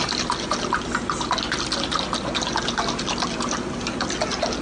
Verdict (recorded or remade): recorded